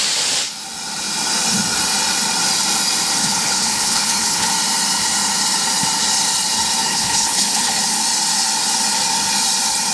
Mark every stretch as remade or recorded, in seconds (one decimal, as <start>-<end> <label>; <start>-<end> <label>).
0.0-3.2 recorded; 3.2-4.5 remade; 4.5-6.9 recorded; 6.9-7.8 remade; 7.8-9.9 recorded